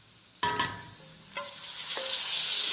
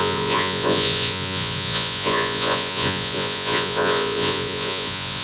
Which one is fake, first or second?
second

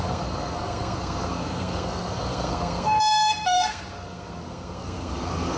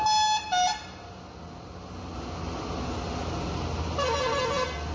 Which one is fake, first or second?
first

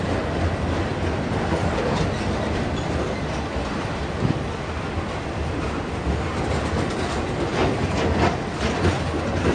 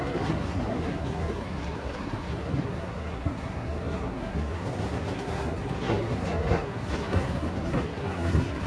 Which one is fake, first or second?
second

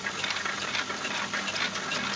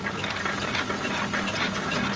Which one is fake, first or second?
first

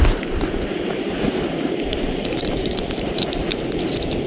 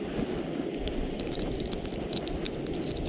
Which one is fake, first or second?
first